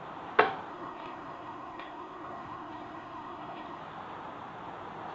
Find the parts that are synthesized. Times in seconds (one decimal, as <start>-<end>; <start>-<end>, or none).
0.7-3.8